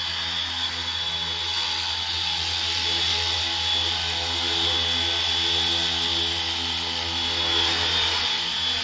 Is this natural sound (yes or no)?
yes